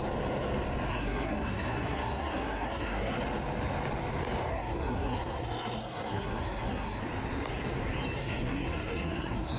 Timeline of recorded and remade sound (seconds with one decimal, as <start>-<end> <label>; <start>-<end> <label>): 0.0-0.9 recorded; 0.9-3.2 remade; 3.2-4.5 recorded; 4.5-7.0 remade; 7.0-8.2 recorded; 8.2-9.6 remade